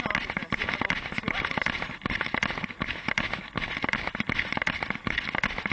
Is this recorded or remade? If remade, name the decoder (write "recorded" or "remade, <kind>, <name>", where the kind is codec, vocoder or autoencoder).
recorded